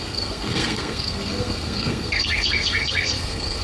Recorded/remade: remade